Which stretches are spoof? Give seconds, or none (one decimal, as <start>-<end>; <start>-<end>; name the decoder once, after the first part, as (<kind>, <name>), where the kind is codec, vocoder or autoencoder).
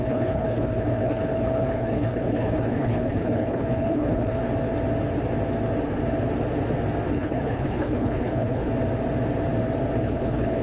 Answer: 0.0-4.4 (codec, HILCodec); 7.1-8.7; 10.0-10.6